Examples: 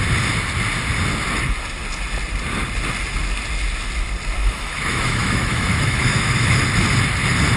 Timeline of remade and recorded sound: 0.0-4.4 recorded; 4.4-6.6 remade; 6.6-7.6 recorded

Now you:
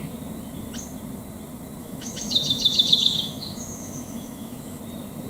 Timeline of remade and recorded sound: 0.0-1.8 recorded; 1.8-4.8 remade; 4.8-5.3 recorded

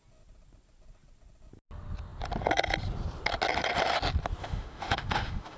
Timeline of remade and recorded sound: 0.0-4.4 recorded; 4.4-5.6 remade